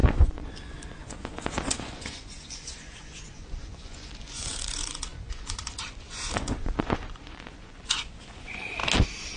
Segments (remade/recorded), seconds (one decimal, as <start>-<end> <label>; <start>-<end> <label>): 0.0-8.8 remade; 8.8-9.4 recorded

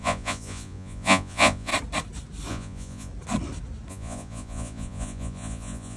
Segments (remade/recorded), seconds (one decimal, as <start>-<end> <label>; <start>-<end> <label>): 0.0-1.7 remade; 1.7-2.5 recorded; 2.5-3.1 remade; 3.1-3.9 recorded; 3.9-6.0 remade

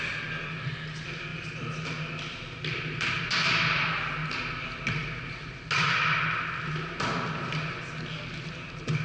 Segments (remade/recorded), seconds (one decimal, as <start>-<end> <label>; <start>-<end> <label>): 0.0-9.0 recorded

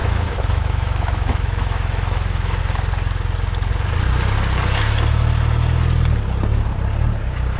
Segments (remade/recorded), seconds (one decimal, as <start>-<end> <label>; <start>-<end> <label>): 0.0-2.6 remade; 2.6-7.6 recorded